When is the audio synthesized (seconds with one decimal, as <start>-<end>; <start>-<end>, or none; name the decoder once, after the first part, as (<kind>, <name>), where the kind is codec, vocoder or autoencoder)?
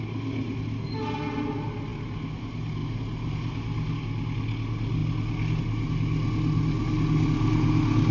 none